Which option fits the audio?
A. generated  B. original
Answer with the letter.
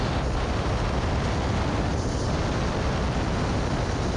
B